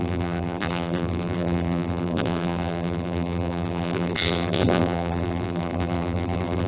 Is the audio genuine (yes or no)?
no